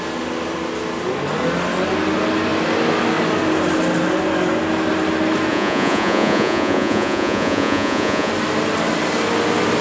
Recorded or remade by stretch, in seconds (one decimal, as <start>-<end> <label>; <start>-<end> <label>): 0.0-5.5 recorded; 5.5-8.3 remade; 8.3-9.8 recorded